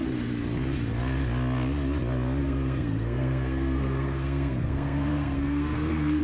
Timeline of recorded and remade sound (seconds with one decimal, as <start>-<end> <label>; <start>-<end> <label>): 0.0-2.4 recorded; 2.4-6.2 remade